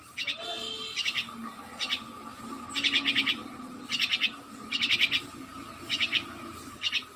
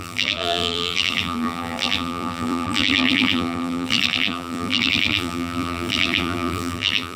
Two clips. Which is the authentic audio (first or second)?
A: first